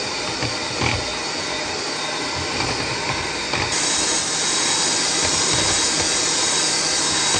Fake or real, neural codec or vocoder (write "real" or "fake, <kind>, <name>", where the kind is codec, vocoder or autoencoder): real